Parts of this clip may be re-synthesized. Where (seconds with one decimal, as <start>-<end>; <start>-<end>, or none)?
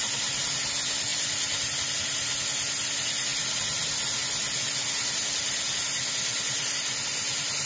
none